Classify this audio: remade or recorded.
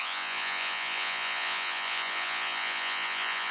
remade